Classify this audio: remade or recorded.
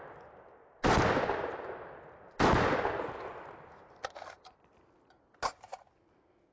recorded